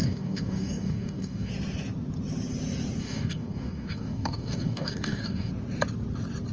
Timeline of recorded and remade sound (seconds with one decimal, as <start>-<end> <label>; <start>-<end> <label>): 0.0-1.5 remade; 1.5-3.0 recorded; 3.0-5.5 remade; 5.5-6.5 recorded